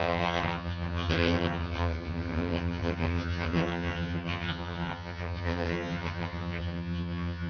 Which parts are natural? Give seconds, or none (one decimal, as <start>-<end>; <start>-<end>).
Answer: none